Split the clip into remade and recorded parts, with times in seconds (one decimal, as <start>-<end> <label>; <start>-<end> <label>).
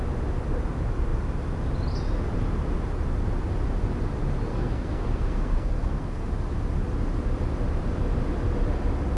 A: 0.0-4.5 recorded; 4.5-6.3 remade; 6.3-9.2 recorded